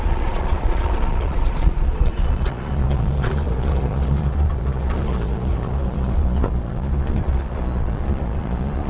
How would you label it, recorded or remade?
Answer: remade